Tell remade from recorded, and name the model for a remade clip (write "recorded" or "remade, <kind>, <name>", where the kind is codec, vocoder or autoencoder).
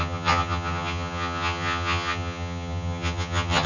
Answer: remade, vocoder, HiFi-GAN